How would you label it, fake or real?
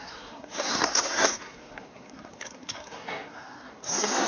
fake